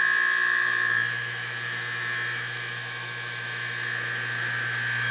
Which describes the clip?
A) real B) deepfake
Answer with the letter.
B